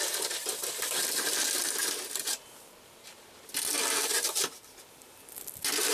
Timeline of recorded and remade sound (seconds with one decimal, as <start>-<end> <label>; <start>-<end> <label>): 0.0-5.9 recorded